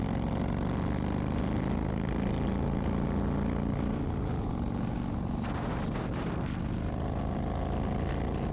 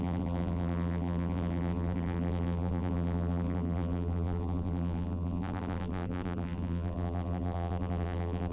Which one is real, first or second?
first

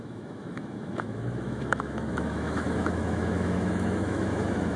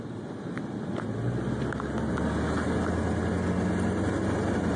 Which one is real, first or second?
second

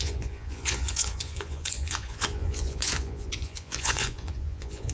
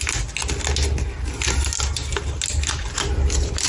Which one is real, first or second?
second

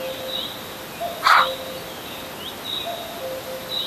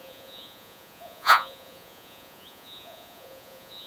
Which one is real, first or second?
first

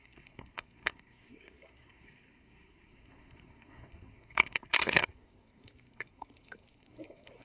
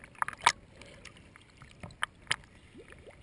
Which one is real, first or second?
second